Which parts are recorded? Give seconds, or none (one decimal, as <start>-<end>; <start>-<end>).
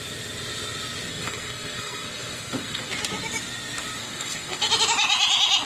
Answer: 0.0-1.1; 2.9-4.0; 4.7-5.6